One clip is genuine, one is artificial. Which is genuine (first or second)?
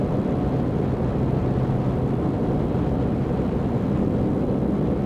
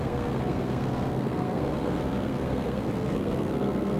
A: first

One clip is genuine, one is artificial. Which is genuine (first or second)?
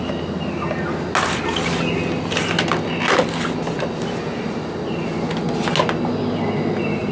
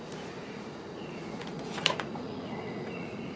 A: first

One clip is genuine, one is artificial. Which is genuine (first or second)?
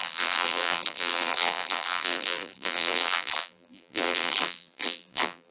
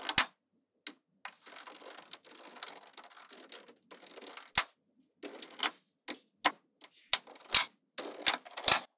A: second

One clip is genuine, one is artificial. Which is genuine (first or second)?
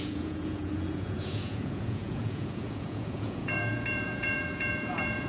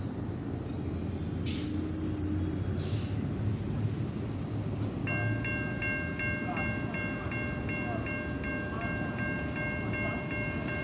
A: second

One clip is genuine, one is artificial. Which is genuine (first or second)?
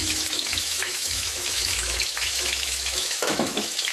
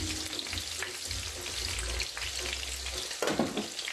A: second